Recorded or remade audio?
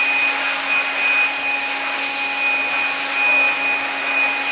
recorded